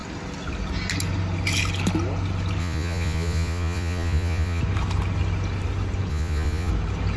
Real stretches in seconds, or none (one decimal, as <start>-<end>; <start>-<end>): 0.0-2.6; 4.6-6.1; 6.7-7.2